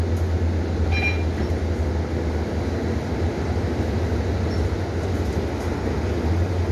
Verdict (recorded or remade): recorded